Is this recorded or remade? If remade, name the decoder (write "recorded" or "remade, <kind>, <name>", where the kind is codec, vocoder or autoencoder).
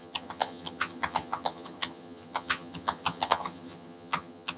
remade, vocoder, HiFi-GAN